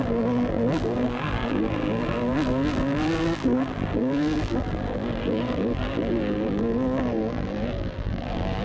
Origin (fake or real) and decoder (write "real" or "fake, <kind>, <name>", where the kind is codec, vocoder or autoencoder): fake, vocoder, BigVGAN v2